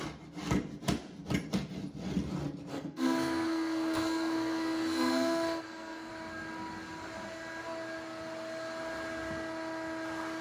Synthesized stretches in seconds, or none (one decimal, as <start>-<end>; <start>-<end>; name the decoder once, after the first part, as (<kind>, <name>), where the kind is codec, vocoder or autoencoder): 2.7-6.1 (codec, SNAC)